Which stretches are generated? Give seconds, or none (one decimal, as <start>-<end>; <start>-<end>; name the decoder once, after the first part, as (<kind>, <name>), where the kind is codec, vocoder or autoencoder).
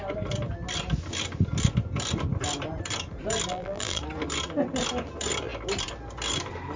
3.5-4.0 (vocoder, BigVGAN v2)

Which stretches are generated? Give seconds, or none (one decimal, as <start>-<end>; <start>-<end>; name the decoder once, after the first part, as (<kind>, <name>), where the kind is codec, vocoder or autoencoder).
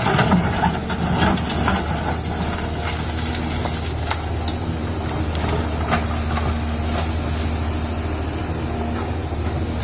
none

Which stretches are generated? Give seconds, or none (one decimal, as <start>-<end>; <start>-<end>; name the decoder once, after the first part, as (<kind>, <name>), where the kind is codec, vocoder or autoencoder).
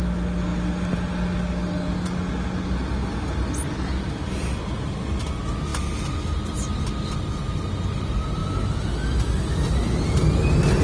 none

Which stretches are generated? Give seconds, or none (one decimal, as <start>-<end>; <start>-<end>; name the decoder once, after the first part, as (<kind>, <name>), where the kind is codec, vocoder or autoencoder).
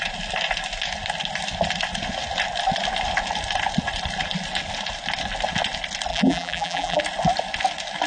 6.1-7.0 (vocoder, BigVGAN v2)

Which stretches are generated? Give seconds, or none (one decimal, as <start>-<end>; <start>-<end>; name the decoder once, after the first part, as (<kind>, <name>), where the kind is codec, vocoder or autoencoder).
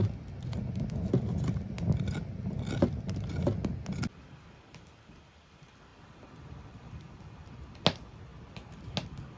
5.9-7.5 (vocoder, BigVGAN v2)